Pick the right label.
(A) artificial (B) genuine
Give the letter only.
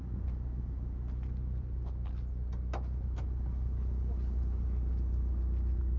B